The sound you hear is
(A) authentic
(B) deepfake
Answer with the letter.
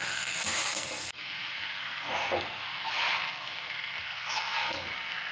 B